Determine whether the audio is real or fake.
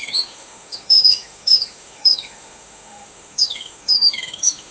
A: fake